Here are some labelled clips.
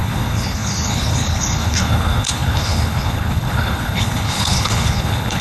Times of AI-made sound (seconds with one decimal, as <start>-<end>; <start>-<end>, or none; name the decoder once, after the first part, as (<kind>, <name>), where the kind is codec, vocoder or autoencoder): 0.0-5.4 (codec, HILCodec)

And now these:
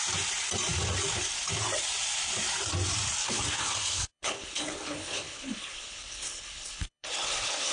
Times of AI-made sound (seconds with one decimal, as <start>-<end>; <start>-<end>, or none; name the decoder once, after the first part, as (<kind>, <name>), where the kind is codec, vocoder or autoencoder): 3.2-7.7 (codec, HILCodec)

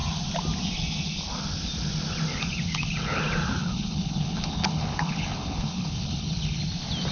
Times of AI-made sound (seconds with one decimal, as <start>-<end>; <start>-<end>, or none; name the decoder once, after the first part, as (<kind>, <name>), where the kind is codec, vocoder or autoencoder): 2.3-3.2 (codec, HILCodec); 3.6-6.6

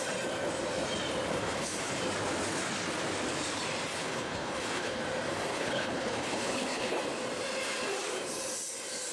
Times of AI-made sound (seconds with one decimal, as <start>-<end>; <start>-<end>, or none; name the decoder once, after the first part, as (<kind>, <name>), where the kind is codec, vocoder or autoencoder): 1.3-2.0 (codec, HILCodec); 3.9-5.0; 5.5-7.0

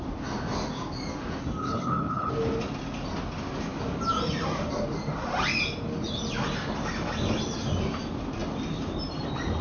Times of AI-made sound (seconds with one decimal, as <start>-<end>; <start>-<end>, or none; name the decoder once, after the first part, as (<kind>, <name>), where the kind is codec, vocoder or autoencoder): 1.6-2.3 (codec, HILCodec)